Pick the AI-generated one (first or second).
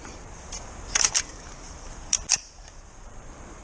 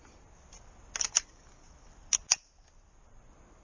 first